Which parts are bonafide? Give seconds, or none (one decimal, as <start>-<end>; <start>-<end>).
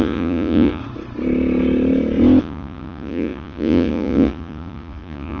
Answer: 0.8-2.4